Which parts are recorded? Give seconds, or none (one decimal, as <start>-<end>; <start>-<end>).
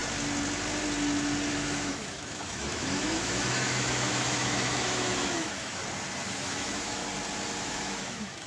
0.0-1.5; 5.8-6.4; 7.0-7.6